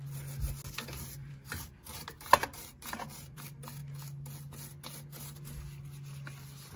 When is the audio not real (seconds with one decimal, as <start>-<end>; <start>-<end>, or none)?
1.2-3.4